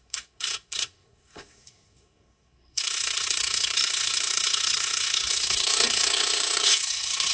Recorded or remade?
remade